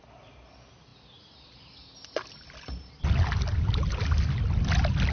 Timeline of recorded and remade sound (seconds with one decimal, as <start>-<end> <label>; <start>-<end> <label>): 0.0-5.1 recorded